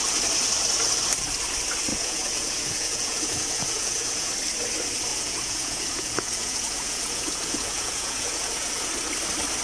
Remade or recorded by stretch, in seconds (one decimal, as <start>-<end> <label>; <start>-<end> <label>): 0.0-1.9 recorded; 1.9-4.3 remade; 4.3-5.1 recorded; 5.1-8.9 remade; 8.9-9.6 recorded